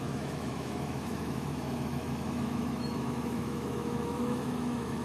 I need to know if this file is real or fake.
fake